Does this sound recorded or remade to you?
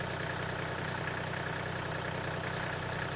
recorded